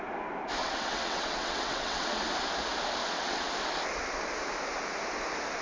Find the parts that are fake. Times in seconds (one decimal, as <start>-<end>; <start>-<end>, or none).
0.6-2.2; 3.0-3.5